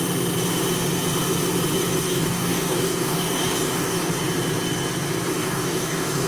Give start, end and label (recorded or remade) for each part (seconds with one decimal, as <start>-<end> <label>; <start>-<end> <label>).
0.0-2.0 recorded; 2.0-4.1 remade; 4.1-5.3 recorded; 5.3-6.3 remade